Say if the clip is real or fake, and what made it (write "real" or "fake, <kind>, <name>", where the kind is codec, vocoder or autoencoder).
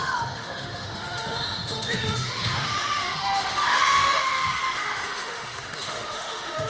fake, autoencoder, DAC-VAE